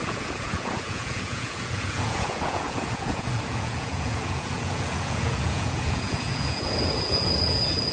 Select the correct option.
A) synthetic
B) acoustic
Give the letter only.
A